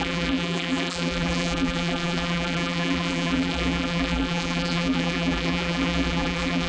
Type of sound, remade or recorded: remade